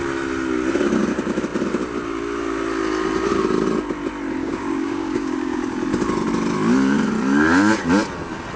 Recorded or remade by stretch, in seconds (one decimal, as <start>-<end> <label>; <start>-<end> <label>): 0.0-4.4 recorded; 4.4-5.7 remade; 5.7-8.6 recorded